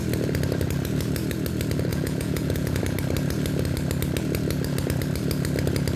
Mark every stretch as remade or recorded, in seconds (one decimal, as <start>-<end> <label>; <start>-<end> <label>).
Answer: 0.0-1.9 recorded; 1.9-2.8 remade; 2.8-6.0 recorded